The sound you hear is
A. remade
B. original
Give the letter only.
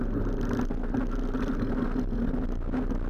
B